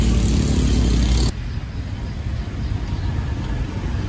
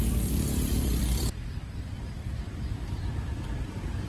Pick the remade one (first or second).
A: second